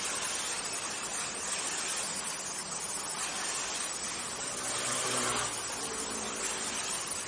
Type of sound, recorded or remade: recorded